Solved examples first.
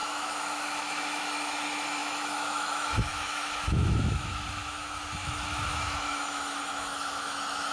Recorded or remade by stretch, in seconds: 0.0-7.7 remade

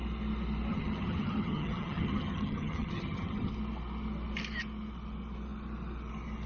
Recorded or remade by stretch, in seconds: 0.0-0.7 recorded; 0.7-3.5 remade; 3.5-6.5 recorded

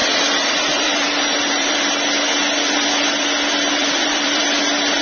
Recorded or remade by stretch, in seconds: 0.0-1.8 remade; 1.8-3.8 recorded; 3.8-4.4 remade; 4.4-5.0 recorded

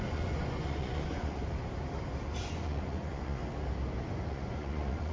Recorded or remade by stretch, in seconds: 0.0-1.4 remade; 1.4-2.5 recorded; 2.5-3.4 remade; 3.4-4.2 recorded; 4.2-5.1 remade

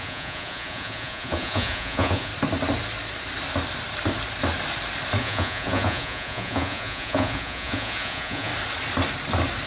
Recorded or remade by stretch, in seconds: 0.0-2.3 remade; 2.3-5.2 recorded; 5.2-8.5 remade; 8.5-9.7 recorded

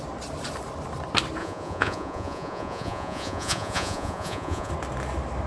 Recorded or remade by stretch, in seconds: 0.0-1.4 recorded; 1.4-4.7 remade; 4.7-5.5 recorded

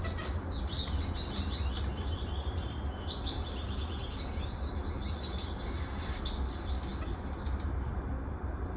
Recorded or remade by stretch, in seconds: 0.0-8.8 recorded